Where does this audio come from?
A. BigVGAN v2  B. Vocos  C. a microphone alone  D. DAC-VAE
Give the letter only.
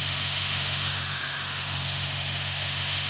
D